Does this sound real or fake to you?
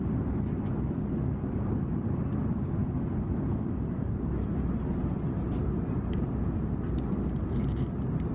real